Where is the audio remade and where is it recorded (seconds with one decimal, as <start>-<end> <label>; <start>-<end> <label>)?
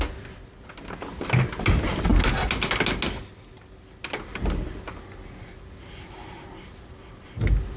0.0-7.8 recorded